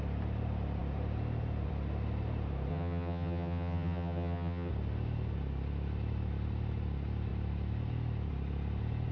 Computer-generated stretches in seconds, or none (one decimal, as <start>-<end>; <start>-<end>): 2.7-4.7